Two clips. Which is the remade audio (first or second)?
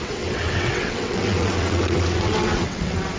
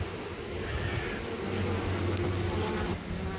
first